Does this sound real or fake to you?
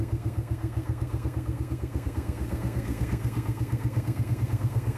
fake